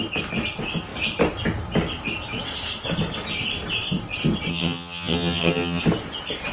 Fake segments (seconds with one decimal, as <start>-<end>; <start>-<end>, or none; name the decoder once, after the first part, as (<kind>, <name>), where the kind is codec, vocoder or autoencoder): 4.5-5.8 (vocoder, HiFi-GAN)